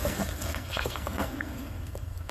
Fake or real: fake